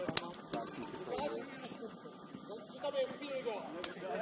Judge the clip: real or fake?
real